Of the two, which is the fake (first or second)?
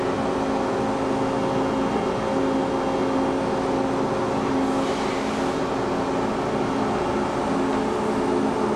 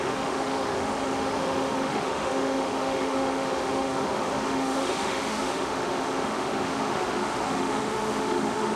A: second